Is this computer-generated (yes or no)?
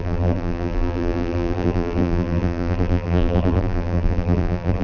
yes